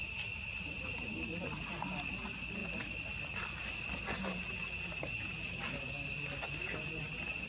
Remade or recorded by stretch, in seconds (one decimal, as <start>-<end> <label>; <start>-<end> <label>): 0.0-7.5 recorded